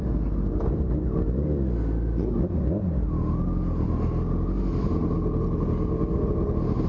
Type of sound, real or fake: real